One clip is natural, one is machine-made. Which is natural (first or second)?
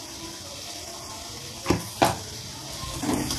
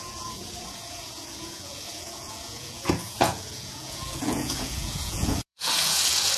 first